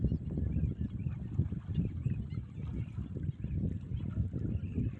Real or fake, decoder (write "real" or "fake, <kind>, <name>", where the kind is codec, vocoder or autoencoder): real